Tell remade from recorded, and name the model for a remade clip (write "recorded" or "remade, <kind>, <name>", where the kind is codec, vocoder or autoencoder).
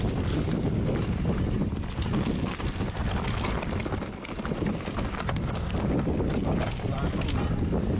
recorded